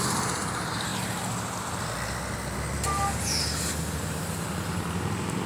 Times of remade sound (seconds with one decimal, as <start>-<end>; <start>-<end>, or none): 0.0-0.9; 4.2-5.5

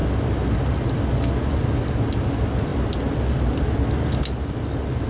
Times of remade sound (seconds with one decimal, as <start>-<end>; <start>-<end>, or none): none

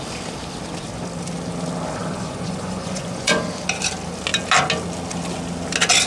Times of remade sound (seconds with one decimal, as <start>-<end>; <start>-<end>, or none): 2.0-3.4

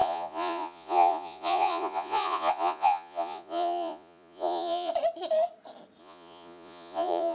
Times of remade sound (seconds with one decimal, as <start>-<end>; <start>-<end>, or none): 0.0-4.9; 6.0-7.3